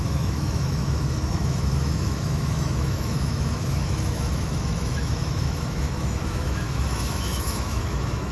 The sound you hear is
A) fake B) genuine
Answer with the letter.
A